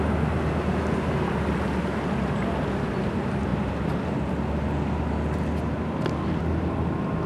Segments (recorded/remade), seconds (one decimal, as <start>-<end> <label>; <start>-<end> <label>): 0.0-7.3 recorded